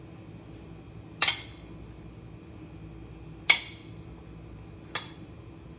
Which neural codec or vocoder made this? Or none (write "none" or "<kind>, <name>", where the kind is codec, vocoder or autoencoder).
none